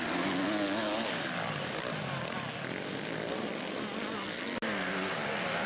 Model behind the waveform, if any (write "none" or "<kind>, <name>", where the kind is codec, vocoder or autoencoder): none